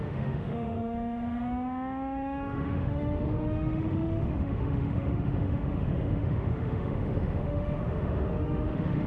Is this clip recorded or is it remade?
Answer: remade